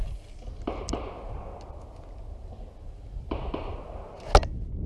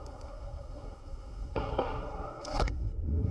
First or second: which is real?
first